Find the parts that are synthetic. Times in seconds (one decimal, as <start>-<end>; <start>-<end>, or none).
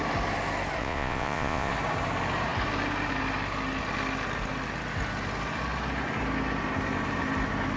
0.8-1.7